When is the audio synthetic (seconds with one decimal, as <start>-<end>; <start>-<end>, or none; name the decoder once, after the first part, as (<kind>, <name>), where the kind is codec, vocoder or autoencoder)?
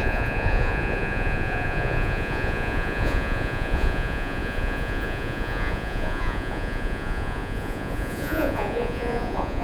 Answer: 0.0-9.6 (vocoder, Vocos)